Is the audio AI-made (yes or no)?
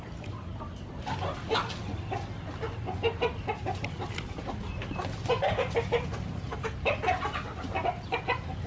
no